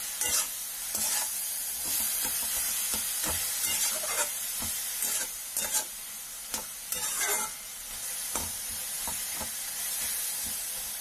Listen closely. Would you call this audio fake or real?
real